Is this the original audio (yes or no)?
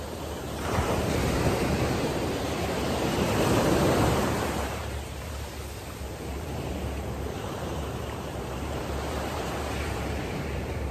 no